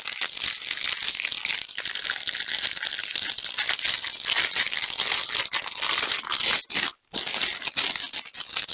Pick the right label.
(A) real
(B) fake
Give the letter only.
A